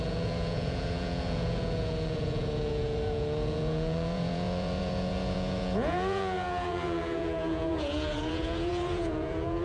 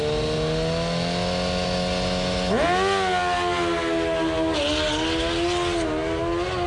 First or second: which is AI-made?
first